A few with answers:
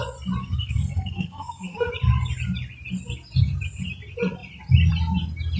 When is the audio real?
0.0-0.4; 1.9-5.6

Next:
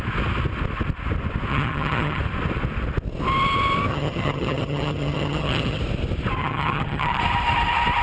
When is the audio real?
0.0-1.5; 2.2-3.9; 5.8-6.4; 7.2-8.0